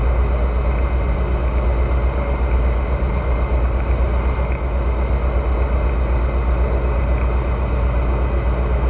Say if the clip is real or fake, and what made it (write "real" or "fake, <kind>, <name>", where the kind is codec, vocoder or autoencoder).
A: real